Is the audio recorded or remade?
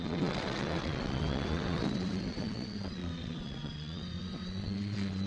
remade